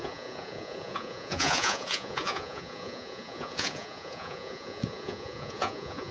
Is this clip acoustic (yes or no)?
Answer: no